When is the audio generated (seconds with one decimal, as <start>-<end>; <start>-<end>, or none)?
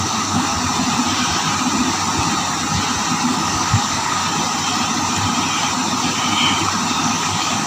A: 0.0-0.5; 3.3-4.2; 6.9-7.7